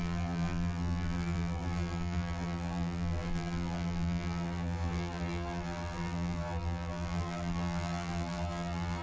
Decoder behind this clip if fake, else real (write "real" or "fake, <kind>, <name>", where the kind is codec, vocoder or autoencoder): fake, vocoder, BigVGAN v2